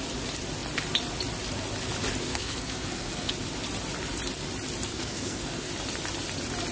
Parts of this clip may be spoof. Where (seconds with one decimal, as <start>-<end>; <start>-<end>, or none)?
2.2-3.3; 4.9-5.7